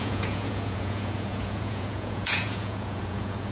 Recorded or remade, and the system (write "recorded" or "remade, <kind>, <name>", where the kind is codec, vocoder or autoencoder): remade, vocoder, Vocos